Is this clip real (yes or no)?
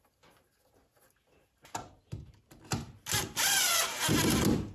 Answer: yes